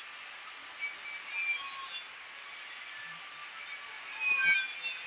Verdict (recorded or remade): recorded